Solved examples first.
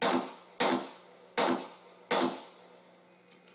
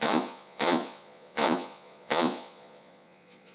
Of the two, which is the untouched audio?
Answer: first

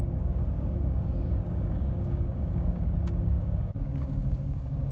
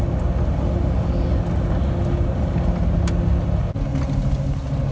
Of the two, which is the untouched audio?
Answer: second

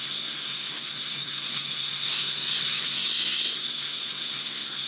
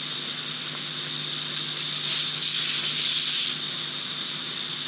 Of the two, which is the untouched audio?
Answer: second